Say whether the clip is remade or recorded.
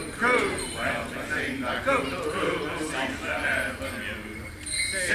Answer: recorded